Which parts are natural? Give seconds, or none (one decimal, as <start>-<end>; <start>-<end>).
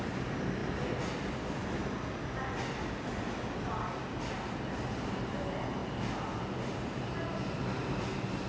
0.0-8.5